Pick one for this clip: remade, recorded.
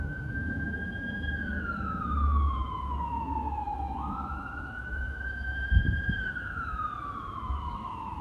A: remade